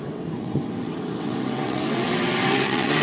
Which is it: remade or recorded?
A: remade